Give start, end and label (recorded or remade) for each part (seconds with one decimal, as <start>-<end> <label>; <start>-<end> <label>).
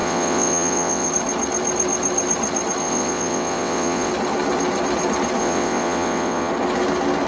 0.0-1.1 remade; 1.1-2.8 recorded; 2.8-4.1 remade; 4.1-5.4 recorded; 5.4-6.5 remade; 6.5-7.3 recorded